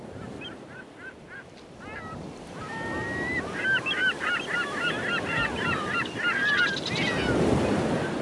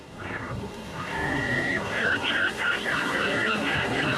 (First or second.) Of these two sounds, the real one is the first